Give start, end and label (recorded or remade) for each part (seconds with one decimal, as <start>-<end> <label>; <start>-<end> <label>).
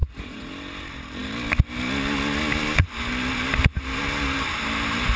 0.0-0.5 remade; 0.5-5.2 recorded